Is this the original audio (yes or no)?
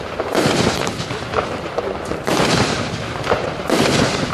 no